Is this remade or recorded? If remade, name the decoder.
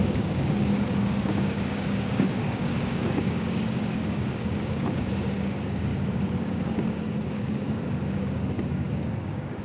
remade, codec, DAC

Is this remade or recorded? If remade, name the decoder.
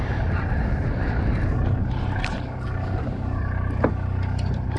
recorded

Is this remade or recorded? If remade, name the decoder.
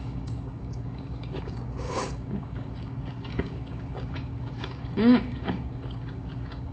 remade, codec, DAC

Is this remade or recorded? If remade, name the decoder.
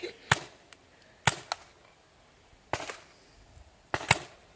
recorded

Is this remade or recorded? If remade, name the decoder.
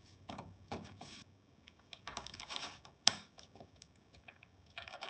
remade, codec, DAC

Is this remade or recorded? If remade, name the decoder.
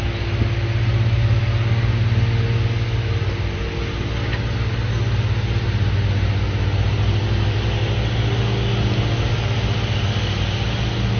recorded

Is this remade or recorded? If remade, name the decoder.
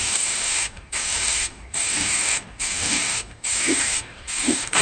remade, codec, DAC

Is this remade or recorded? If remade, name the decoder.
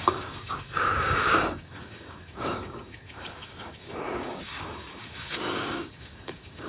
remade, codec, DAC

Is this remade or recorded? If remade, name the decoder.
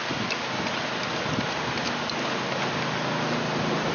recorded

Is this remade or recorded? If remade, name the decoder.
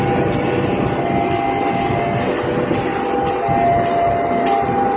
recorded